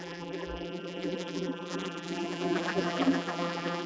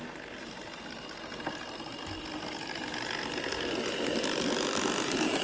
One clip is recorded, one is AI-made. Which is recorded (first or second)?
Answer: second